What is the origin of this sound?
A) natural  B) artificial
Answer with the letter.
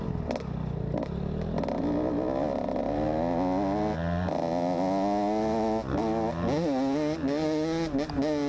A